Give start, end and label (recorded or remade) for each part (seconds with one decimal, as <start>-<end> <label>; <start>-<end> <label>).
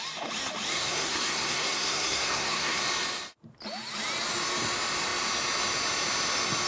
0.0-0.7 recorded; 0.7-2.8 remade; 2.8-6.7 recorded